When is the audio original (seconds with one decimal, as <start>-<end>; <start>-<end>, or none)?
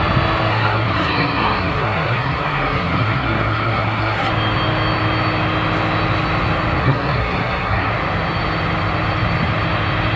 0.0-0.5; 4.3-6.8; 7.9-10.2